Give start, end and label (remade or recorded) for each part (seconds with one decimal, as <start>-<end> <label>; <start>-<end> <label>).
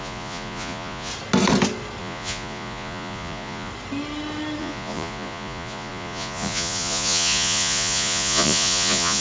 0.0-1.1 remade; 1.1-2.0 recorded; 2.0-3.7 remade; 3.7-4.6 recorded; 4.6-9.2 remade